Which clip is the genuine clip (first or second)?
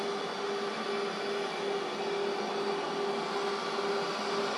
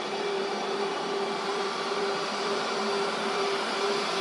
first